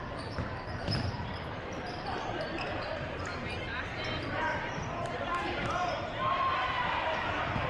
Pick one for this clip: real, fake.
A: fake